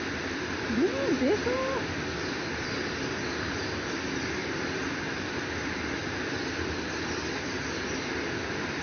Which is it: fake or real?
real